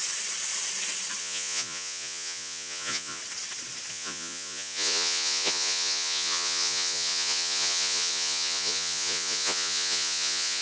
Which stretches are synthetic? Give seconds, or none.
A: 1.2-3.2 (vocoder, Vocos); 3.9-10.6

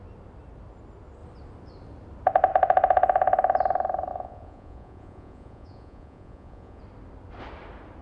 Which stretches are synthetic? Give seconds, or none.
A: 4.1-6.8 (vocoder, Vocos)

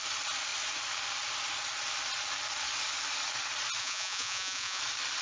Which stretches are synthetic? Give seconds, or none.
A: 3.8-4.8 (vocoder, Vocos)

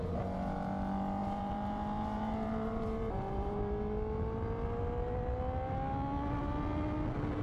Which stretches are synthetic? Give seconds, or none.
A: 1.2-3.6 (vocoder, BigVGAN v2)